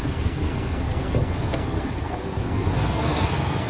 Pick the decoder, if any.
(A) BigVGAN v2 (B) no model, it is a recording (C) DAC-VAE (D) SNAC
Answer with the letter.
D